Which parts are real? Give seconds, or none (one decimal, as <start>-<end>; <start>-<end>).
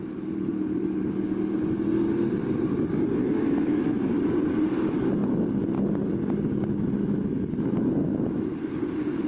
0.0-3.2; 4.1-7.0; 8.7-9.3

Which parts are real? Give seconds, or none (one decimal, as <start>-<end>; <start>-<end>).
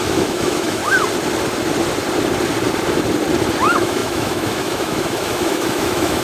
0.8-3.6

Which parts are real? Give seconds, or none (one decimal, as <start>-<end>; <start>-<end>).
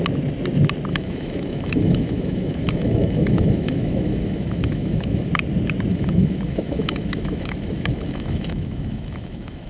0.0-0.9; 5.3-5.9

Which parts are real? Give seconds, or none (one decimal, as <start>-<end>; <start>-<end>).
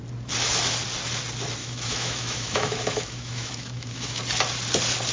0.0-1.6; 4.2-5.1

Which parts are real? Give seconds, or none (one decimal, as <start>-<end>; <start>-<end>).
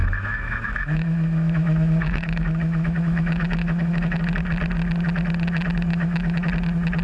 4.2-5.9; 6.5-7.0